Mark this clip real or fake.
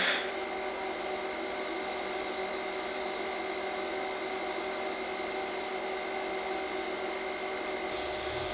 real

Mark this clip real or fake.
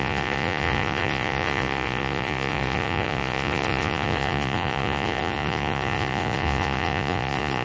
fake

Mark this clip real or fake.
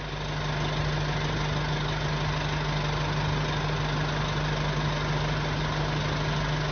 real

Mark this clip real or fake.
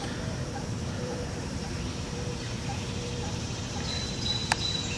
fake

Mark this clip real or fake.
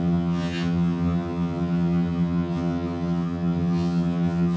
fake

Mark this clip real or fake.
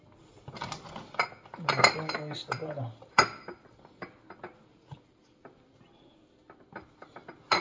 real